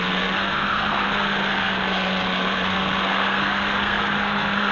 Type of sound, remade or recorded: remade